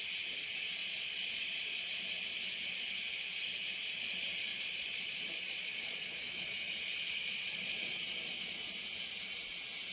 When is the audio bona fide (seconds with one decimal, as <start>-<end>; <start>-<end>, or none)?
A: 0.0-0.8; 2.0-4.5; 8.7-9.9